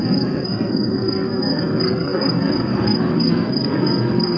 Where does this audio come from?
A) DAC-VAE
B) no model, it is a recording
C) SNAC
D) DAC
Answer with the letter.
C